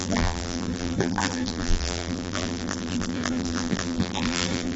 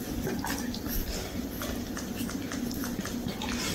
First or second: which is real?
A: second